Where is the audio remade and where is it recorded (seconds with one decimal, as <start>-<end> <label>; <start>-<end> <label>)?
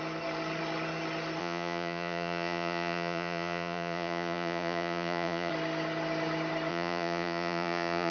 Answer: 0.0-1.4 recorded; 1.4-5.5 remade; 5.5-6.7 recorded; 6.7-8.1 remade